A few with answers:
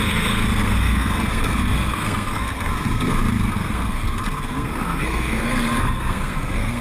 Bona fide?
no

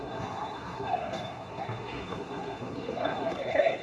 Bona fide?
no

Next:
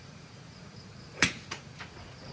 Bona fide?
no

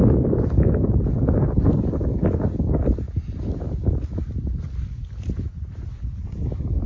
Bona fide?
yes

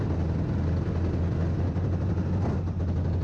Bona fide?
yes